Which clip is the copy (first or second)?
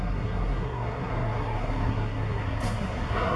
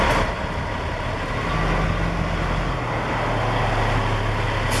first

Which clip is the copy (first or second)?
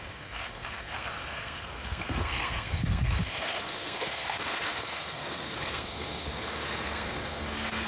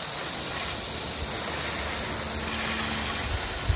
first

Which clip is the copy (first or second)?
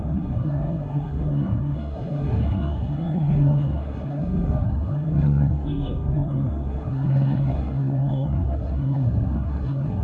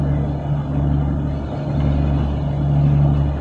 first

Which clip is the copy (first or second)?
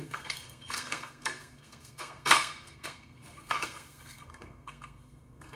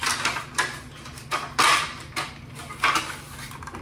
first